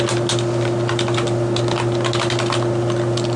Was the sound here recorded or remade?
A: recorded